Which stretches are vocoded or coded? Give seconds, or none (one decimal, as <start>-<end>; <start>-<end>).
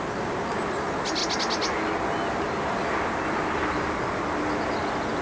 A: none